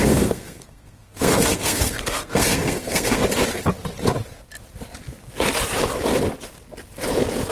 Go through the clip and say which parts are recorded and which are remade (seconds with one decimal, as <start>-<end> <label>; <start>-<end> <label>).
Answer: 0.0-3.2 remade; 3.2-7.5 recorded

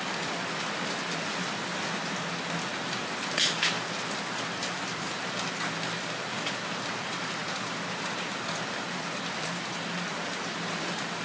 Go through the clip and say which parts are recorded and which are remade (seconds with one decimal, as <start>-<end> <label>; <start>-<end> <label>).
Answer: 0.0-1.7 remade; 1.7-2.8 recorded; 2.8-11.2 remade

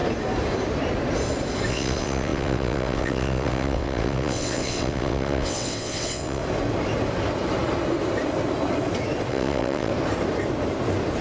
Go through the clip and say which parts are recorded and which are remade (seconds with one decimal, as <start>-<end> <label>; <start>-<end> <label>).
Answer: 0.0-1.7 recorded; 1.7-6.4 remade; 6.4-9.3 recorded; 9.3-9.9 remade; 9.9-11.2 recorded

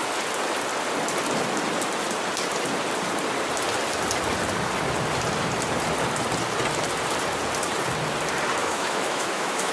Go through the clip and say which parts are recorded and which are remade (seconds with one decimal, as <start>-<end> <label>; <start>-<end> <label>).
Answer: 0.0-8.6 recorded; 8.6-9.7 remade

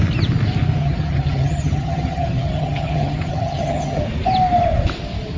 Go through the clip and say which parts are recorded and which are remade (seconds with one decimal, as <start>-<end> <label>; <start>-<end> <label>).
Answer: 0.0-0.8 recorded; 0.8-4.0 remade; 4.0-5.4 recorded

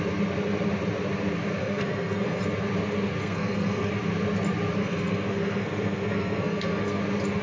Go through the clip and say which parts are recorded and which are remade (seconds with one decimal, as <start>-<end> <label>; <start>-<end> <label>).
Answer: 0.0-1.6 recorded; 1.6-2.4 remade; 2.4-3.2 recorded; 3.2-3.9 remade; 3.9-4.8 recorded; 4.8-7.0 remade; 7.0-7.4 recorded